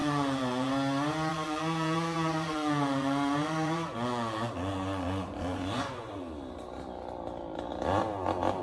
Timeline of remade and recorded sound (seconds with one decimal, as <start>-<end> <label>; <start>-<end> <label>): 0.0-0.7 remade; 0.7-1.3 recorded; 1.3-6.2 remade; 6.2-8.6 recorded